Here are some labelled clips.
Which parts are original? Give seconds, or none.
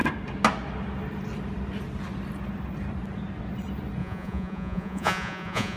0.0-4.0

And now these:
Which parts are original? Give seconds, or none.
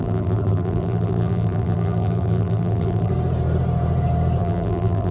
3.1-4.4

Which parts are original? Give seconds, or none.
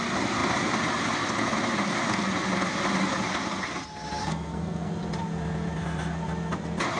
0.0-4.2; 4.9-7.0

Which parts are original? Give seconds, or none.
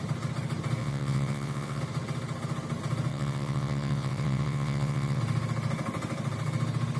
0.0-0.8; 1.8-3.1; 5.2-7.0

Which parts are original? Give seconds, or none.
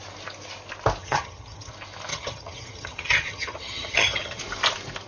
0.0-1.0; 1.7-2.1; 4.4-5.1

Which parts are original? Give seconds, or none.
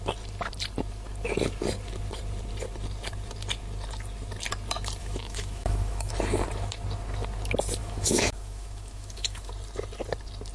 0.0-5.0; 6.1-7.8; 9.5-10.5